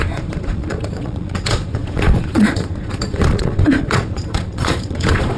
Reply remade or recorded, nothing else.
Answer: remade